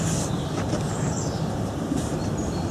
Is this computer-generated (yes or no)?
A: yes